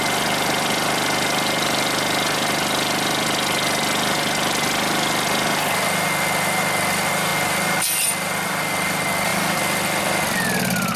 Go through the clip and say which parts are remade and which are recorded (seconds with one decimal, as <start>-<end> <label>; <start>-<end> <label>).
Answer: 0.0-11.0 recorded